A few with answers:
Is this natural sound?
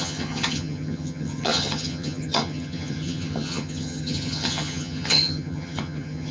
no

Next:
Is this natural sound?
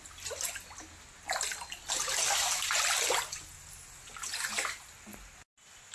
yes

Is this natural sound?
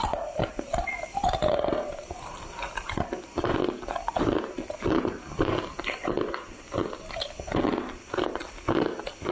yes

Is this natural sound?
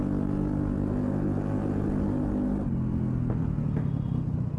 yes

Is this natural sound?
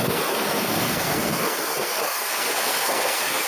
no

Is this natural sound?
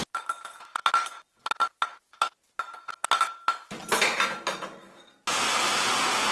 yes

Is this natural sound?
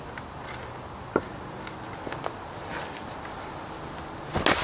yes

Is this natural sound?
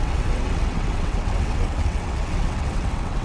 no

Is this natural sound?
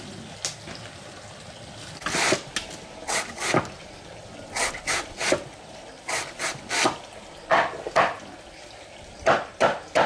yes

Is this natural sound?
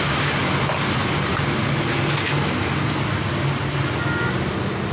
yes